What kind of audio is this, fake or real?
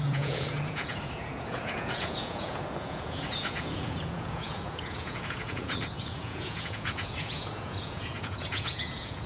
fake